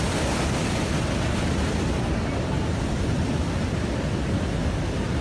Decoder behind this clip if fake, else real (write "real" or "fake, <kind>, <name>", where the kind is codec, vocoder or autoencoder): real